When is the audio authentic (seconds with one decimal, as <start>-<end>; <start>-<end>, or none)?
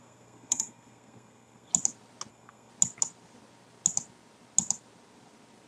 1.7-2.3; 2.7-5.7